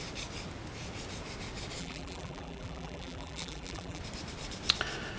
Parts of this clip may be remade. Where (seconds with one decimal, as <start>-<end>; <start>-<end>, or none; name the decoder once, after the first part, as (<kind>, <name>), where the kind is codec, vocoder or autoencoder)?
1.8-4.0 (vocoder, BigVGAN v2)